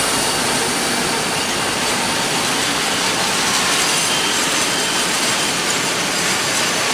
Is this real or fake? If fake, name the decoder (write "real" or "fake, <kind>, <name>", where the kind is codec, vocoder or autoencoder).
real